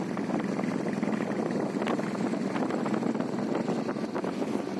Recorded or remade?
recorded